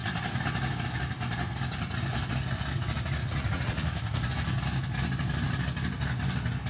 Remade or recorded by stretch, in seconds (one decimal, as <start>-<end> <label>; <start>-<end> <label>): 0.0-3.2 recorded; 3.2-4.3 remade; 4.3-6.7 recorded